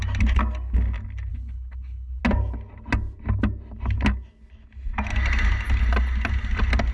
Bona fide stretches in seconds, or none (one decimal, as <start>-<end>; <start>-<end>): 0.0-1.3; 2.2-6.9